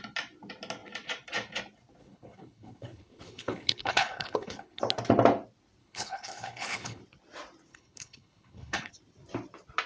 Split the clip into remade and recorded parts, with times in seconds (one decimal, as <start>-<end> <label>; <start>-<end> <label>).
0.0-2.0 recorded; 2.0-4.8 remade; 4.8-5.8 recorded; 5.8-7.0 remade; 7.0-7.7 recorded; 7.7-8.9 remade; 8.9-9.9 recorded